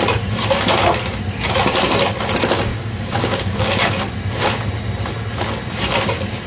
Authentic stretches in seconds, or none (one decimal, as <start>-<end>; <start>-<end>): 0.0-2.7; 3.9-6.5